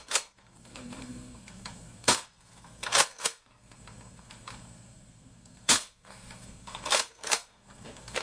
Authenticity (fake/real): fake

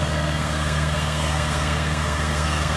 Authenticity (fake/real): fake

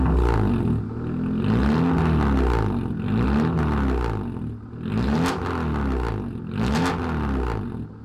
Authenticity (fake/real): real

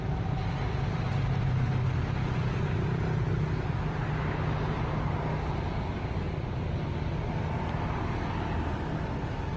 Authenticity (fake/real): real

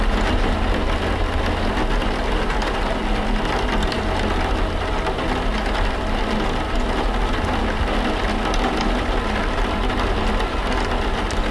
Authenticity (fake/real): real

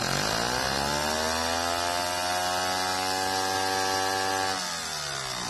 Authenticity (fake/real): real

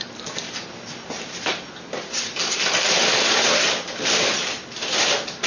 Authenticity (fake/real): real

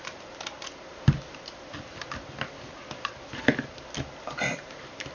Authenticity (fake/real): real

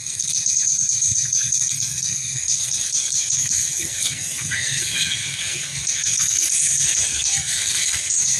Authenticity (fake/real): fake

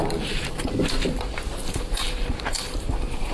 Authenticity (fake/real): fake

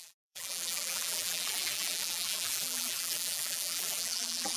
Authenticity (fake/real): fake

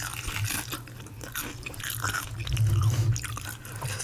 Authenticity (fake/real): fake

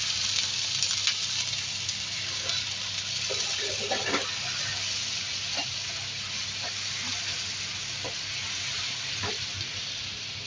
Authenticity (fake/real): fake